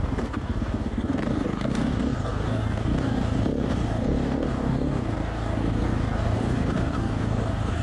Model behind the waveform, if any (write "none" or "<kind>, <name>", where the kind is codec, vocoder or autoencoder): codec, DAC